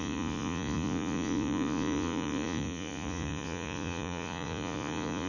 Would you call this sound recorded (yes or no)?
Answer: no